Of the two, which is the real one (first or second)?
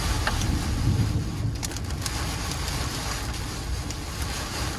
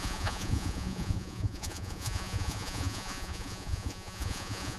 first